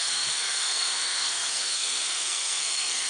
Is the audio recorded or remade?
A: remade